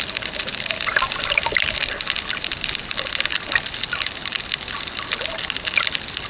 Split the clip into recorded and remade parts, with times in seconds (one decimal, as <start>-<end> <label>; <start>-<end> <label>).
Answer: 0.0-6.3 remade